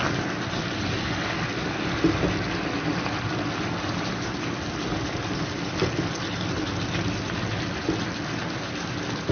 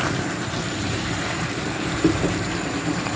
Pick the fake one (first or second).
second